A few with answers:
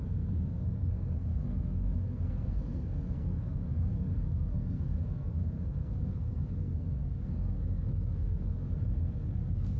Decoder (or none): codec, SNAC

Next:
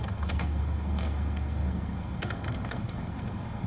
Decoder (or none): codec, SNAC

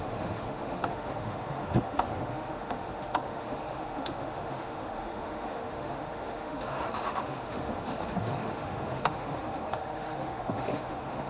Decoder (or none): autoencoder, DAC-VAE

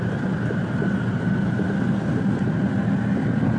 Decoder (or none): none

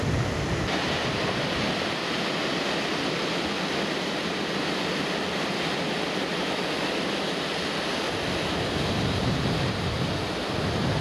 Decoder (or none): none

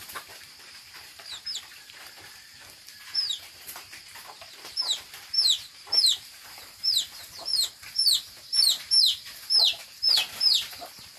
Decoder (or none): vocoder, BigVGAN v2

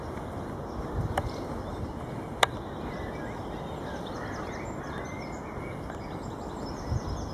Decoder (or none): none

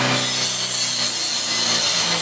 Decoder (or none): none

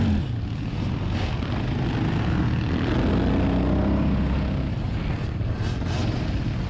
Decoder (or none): none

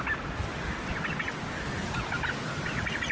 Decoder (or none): none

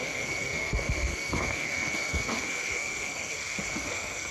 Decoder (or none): codec, SNAC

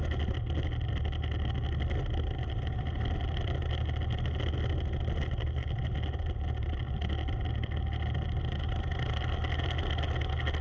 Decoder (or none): none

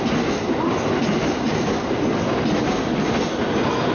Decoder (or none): none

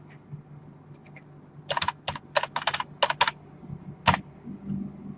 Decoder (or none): none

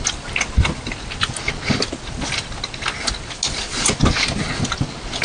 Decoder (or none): none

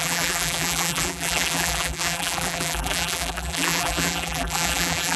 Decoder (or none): vocoder, BigVGAN v2